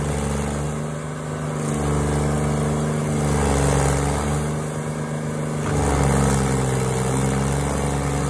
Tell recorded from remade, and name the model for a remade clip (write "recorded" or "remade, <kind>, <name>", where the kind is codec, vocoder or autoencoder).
recorded